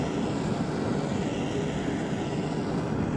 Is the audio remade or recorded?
recorded